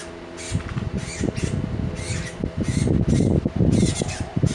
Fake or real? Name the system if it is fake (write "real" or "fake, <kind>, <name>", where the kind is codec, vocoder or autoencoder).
real